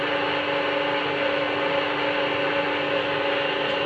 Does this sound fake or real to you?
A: real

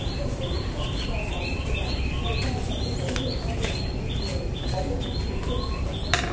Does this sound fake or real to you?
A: real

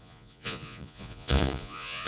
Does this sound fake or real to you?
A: fake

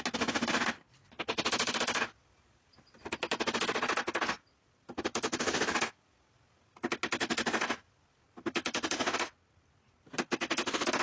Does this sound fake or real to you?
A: real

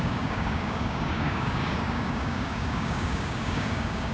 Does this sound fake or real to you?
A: fake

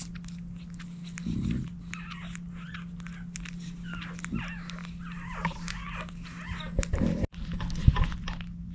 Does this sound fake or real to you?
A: real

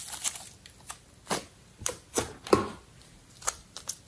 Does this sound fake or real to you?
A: real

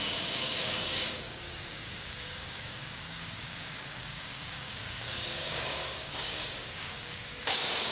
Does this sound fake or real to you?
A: fake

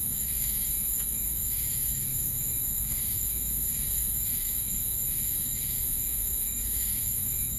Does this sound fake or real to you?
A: fake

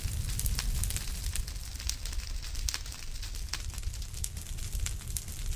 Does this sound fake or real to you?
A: real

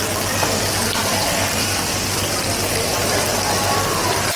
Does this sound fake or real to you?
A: real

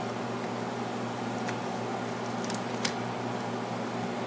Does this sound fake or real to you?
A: real